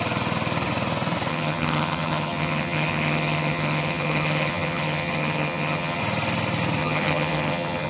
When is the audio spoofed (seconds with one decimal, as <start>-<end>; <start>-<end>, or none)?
1.3-6.0; 6.8-7.9

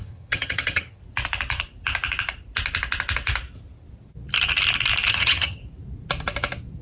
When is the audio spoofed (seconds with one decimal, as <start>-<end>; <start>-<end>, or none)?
0.0-1.0; 5.1-5.6

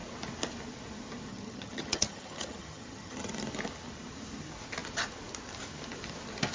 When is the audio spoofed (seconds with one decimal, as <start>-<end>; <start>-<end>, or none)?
1.3-3.3